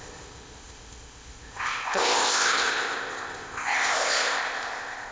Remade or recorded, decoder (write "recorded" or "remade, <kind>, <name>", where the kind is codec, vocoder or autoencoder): remade, codec, ZipCodec